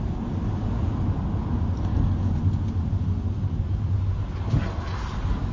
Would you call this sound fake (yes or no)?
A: no